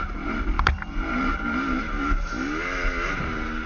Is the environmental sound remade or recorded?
remade